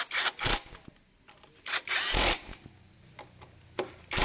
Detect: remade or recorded recorded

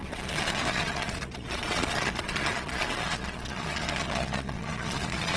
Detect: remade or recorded remade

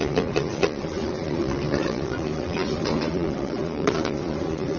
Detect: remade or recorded remade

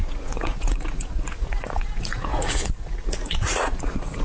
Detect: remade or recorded remade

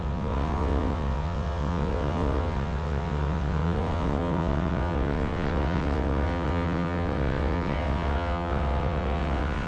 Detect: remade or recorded remade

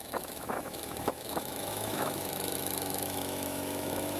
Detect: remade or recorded remade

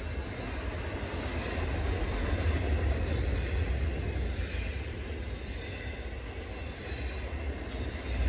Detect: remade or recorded recorded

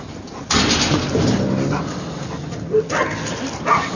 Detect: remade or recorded recorded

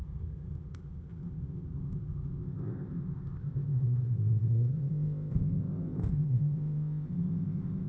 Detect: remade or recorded remade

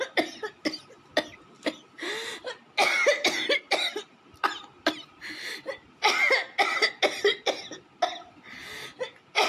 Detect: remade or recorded recorded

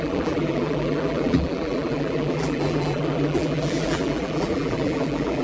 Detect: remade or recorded remade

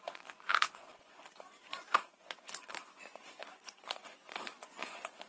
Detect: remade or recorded remade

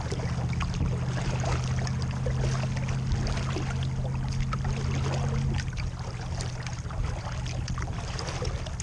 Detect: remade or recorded recorded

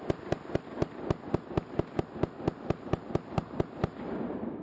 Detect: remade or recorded recorded